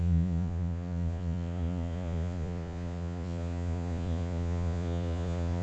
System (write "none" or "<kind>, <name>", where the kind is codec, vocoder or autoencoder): vocoder, Vocos